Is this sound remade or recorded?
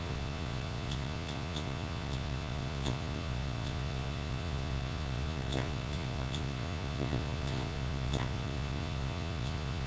remade